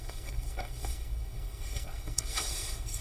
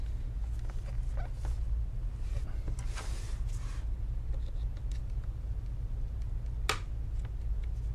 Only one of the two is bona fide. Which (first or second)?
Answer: second